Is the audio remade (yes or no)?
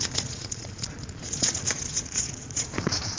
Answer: yes